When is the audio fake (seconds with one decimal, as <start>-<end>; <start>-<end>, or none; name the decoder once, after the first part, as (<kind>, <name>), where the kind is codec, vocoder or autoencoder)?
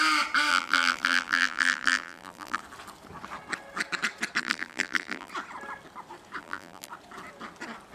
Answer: 0.5-2.6 (vocoder, BigVGAN v2); 4.4-5.3; 6.4-6.9